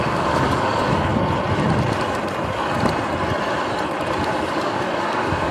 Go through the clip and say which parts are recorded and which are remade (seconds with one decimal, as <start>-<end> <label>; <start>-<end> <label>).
0.0-1.1 remade; 1.1-4.4 recorded; 4.4-5.5 remade